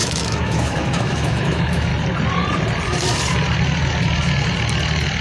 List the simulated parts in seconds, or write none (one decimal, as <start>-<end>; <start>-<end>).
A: 0.0-1.9